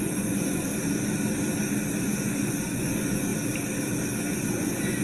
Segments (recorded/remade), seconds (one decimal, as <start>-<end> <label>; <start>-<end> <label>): 0.0-0.7 remade; 0.7-2.0 recorded; 2.0-3.3 remade; 3.3-4.2 recorded; 4.2-5.0 remade

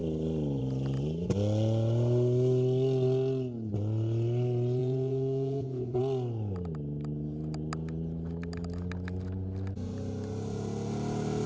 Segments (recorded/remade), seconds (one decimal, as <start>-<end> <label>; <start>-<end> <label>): 0.0-4.8 recorded; 4.8-6.0 remade; 6.0-11.5 recorded